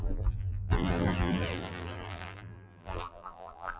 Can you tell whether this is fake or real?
fake